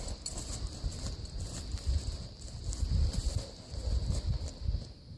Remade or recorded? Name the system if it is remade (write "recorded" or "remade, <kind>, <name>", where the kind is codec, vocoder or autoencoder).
recorded